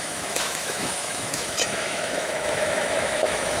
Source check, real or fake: fake